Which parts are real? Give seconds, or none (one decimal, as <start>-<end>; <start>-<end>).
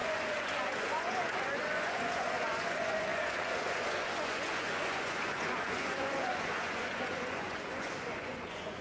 none